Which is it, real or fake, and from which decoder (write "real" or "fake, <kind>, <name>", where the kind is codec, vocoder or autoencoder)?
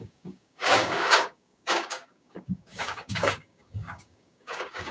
fake, codec, DAC